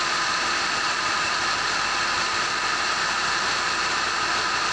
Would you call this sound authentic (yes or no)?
no